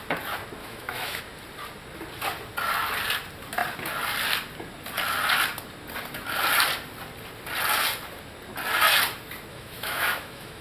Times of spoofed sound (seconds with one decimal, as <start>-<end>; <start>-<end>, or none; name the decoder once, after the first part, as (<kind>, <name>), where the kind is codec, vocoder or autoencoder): 0.6-1.2 (autoencoder, DAC-VAE); 9.5-10.6